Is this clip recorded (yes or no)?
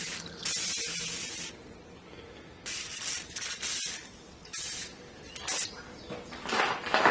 yes